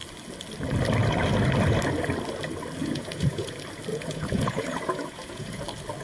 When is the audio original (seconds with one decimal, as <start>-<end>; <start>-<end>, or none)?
0.0-2.8; 3.5-3.9; 5.6-6.0